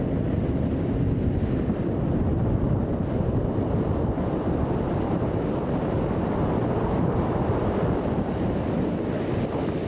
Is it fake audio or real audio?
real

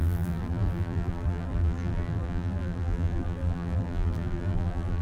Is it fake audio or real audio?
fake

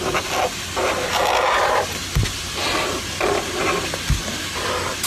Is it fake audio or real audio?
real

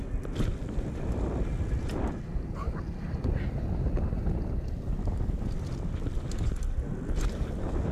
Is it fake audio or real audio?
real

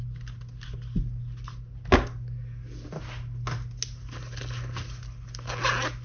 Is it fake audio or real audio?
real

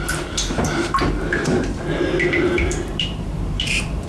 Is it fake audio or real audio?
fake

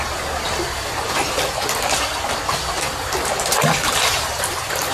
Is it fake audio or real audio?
real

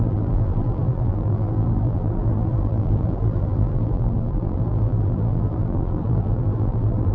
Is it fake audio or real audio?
fake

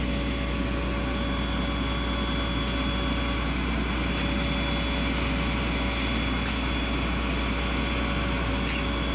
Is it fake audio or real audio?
real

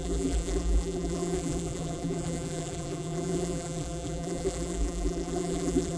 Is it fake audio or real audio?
fake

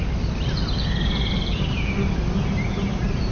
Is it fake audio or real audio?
real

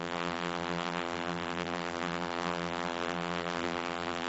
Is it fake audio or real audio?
fake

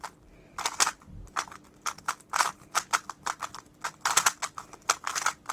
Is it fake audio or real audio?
fake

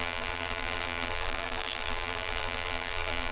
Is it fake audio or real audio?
fake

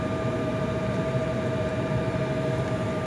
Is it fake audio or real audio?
fake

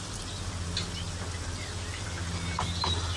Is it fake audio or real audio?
real